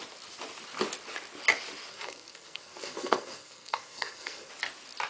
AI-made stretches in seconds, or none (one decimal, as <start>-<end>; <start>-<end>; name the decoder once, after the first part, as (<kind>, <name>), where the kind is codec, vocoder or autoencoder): 1.9-4.5 (codec, SNAC)